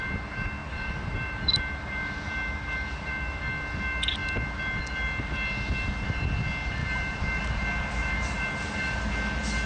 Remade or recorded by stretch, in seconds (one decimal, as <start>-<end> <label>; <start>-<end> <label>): 0.0-0.6 recorded; 0.6-3.4 remade; 3.4-6.8 recorded; 6.8-7.4 remade; 7.4-8.0 recorded; 8.0-9.1 remade; 9.1-9.7 recorded